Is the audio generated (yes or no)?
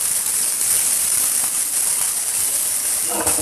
no